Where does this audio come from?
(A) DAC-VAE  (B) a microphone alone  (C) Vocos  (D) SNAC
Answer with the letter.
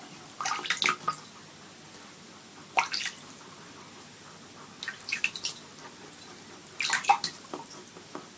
B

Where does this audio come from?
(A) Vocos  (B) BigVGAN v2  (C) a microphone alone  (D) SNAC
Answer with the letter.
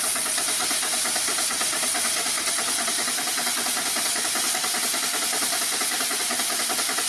C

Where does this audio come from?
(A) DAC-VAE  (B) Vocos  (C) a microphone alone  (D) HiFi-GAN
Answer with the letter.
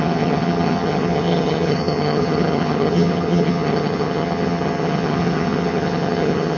D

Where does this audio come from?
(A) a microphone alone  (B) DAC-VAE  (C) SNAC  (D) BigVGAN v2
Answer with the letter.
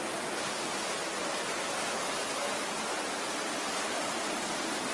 A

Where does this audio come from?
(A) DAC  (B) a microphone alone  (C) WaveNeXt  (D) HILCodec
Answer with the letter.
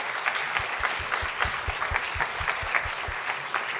B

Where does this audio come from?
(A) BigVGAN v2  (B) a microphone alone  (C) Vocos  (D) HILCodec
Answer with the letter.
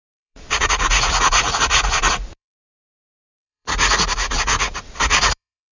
C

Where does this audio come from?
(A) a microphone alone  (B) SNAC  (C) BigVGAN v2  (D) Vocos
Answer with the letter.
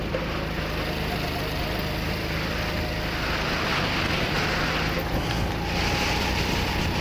A